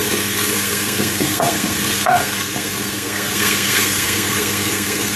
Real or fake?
fake